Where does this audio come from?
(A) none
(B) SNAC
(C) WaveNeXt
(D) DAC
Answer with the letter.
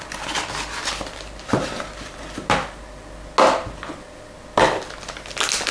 A